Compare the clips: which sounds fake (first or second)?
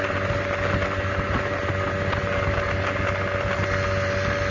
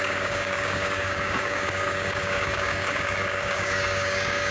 second